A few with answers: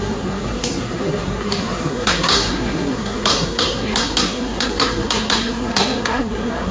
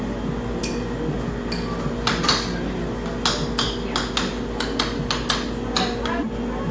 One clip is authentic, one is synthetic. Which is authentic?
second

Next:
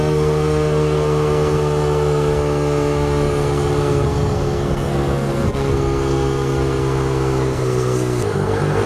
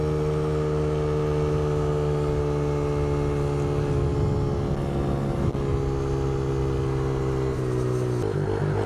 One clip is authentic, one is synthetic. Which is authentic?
second